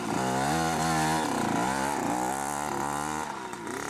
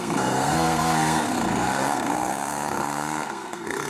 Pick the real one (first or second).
first